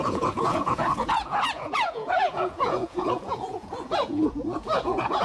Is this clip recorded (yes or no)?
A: no